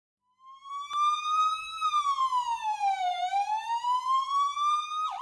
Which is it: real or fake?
fake